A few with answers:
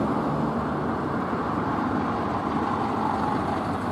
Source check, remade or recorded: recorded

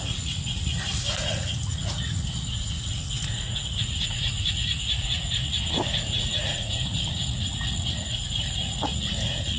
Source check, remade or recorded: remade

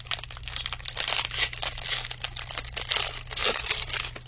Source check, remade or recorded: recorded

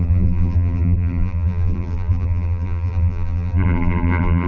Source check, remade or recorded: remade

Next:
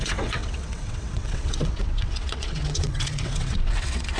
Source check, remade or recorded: remade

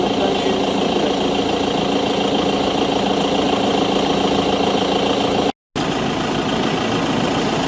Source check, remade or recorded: recorded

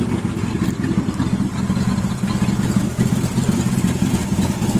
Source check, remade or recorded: recorded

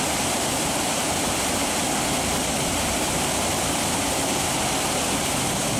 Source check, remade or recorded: remade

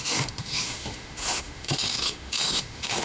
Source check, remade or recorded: remade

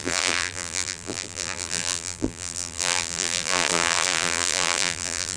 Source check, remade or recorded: remade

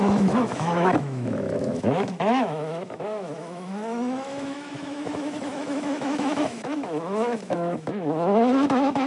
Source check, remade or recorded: remade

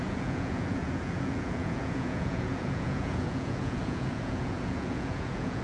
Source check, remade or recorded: remade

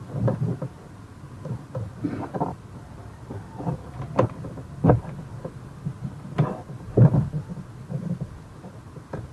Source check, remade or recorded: remade